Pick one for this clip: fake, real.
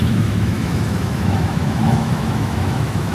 fake